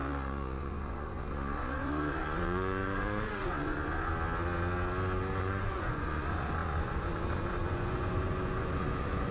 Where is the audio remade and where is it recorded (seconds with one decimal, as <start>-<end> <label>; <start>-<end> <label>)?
0.0-4.1 remade; 4.1-5.4 recorded; 5.4-9.3 remade